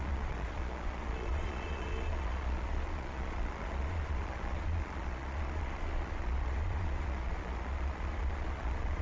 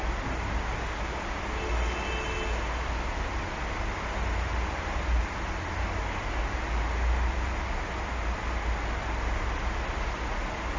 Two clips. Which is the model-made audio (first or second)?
first